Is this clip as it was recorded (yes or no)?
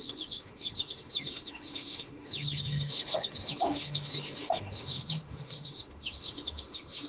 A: no